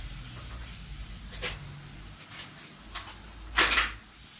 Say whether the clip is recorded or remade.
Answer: recorded